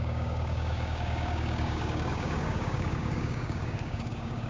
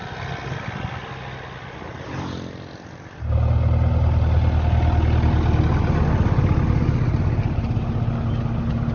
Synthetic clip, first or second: first